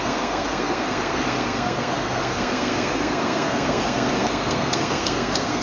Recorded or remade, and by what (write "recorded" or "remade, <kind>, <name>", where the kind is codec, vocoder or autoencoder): remade, codec, SNAC